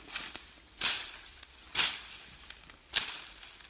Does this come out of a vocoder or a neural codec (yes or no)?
no